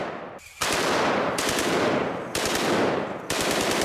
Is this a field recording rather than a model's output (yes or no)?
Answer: yes